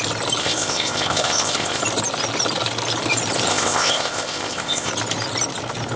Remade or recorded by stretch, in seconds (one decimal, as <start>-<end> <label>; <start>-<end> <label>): 0.0-0.4 recorded; 0.4-1.8 remade; 1.8-3.5 recorded; 3.5-4.9 remade; 4.9-6.0 recorded